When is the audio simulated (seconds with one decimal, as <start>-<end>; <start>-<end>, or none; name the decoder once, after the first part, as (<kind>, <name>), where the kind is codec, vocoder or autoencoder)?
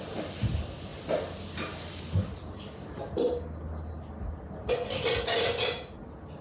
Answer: none